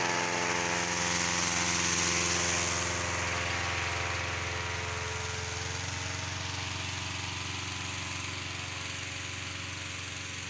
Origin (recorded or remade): recorded